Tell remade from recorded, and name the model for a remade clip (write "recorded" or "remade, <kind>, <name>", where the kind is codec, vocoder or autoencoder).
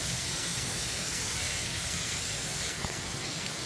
remade, codec, SNAC